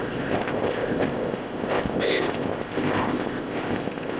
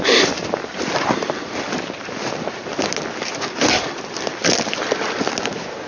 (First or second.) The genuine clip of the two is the second